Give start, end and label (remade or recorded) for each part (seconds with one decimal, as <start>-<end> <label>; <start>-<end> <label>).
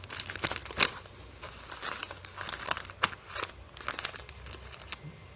0.0-5.4 recorded